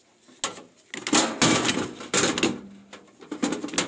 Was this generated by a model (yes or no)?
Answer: no